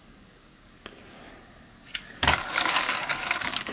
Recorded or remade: remade